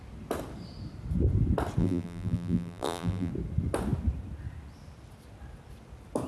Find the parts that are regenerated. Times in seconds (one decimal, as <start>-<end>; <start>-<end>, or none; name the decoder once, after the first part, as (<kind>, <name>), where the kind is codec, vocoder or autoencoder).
1.8-3.3 (vocoder, BigVGAN v2)